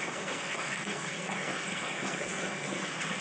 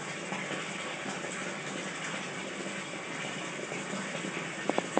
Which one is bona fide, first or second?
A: second